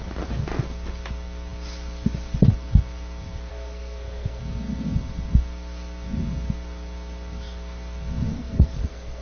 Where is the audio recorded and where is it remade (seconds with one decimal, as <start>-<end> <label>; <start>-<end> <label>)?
0.0-3.5 recorded; 3.5-4.4 remade; 4.4-8.3 recorded; 8.3-9.2 remade